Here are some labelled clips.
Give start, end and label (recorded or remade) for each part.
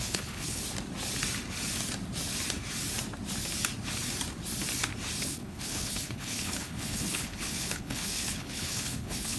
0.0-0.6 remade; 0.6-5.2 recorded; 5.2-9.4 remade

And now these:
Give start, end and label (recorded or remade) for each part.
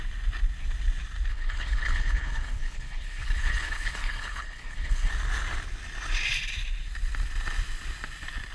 0.0-1.3 recorded; 1.3-5.1 remade; 5.1-8.5 recorded